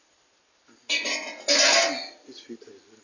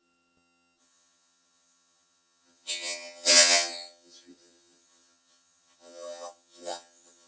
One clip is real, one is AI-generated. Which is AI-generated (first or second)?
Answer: second